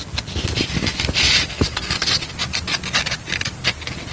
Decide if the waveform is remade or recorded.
remade